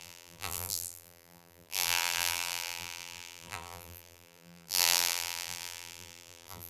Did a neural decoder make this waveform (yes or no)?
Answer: yes